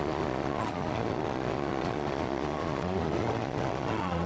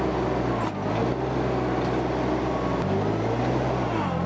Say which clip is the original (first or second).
second